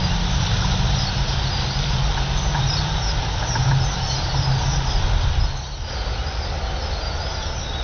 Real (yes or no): yes